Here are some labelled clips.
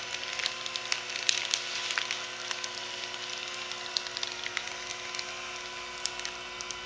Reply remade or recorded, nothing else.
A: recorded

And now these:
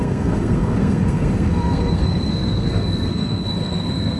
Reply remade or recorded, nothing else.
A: remade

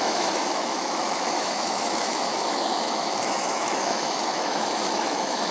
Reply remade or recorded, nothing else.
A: remade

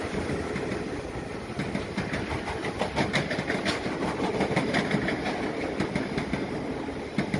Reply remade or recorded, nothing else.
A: recorded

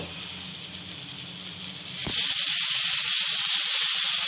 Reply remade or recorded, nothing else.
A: recorded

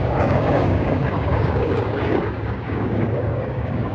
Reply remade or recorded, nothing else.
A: remade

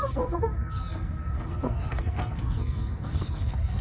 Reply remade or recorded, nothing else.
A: remade